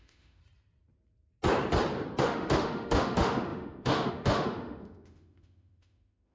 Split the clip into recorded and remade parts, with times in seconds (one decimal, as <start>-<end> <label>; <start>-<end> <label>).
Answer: 0.0-0.4 remade; 0.4-2.2 recorded; 2.2-6.3 remade